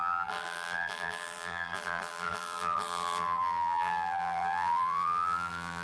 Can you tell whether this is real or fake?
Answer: fake